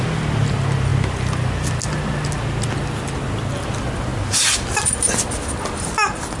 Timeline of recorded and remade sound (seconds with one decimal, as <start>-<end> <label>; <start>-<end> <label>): 0.0-6.4 recorded